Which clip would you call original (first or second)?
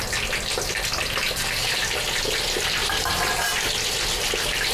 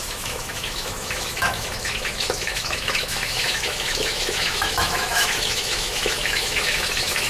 first